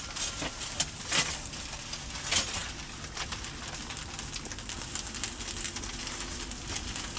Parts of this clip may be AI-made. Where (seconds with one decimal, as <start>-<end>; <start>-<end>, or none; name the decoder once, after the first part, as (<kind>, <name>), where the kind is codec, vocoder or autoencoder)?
none